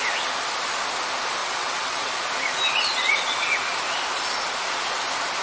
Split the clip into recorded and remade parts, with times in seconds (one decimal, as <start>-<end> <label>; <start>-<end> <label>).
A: 0.0-1.4 recorded; 1.4-2.1 remade; 2.1-5.4 recorded